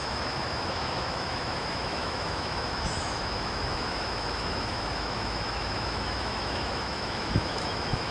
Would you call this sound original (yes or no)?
no